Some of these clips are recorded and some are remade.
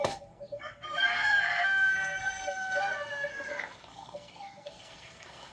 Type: remade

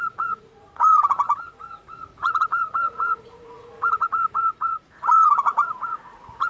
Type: remade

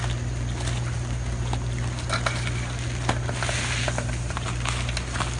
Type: recorded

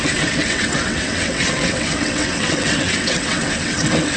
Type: remade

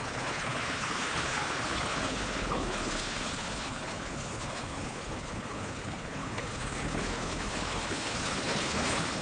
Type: remade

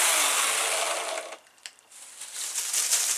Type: recorded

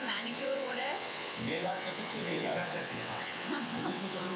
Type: remade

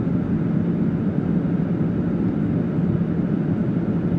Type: recorded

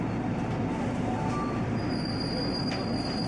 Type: recorded